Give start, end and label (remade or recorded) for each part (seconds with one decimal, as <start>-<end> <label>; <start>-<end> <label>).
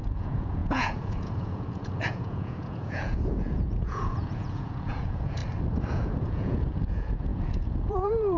0.0-5.4 remade; 5.4-5.9 recorded; 5.9-8.4 remade